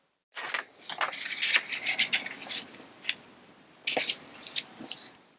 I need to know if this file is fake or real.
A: real